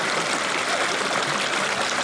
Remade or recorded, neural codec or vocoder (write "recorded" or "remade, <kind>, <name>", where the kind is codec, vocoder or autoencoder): recorded